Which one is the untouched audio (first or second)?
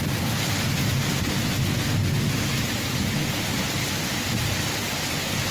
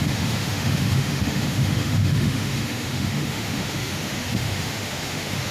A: first